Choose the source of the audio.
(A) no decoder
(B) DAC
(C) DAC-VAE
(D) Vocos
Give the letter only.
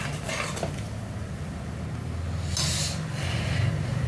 A